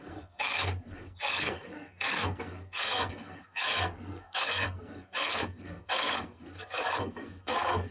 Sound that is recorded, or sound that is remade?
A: remade